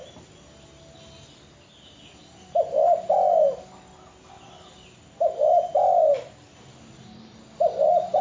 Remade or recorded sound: recorded